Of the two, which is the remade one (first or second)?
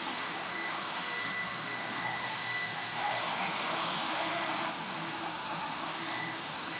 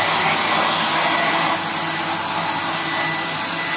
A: first